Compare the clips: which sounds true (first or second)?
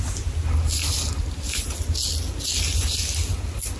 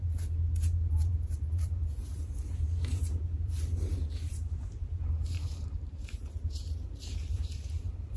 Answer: first